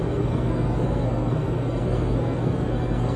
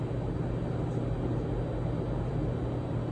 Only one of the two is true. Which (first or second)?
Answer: second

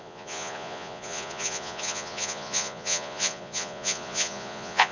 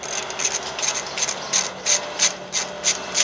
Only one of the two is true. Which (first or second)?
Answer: second